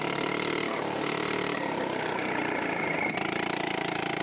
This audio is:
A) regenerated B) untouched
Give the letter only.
A